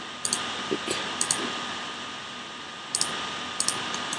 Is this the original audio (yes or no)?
yes